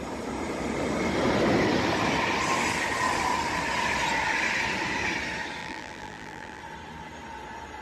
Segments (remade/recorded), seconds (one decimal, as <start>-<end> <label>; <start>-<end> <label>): 0.0-5.6 recorded; 5.6-6.6 remade; 6.6-7.8 recorded